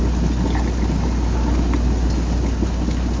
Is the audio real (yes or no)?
yes